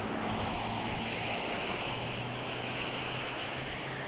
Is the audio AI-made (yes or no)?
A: yes